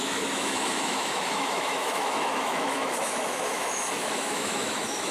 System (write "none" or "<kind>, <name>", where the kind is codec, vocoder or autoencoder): autoencoder, DAC-VAE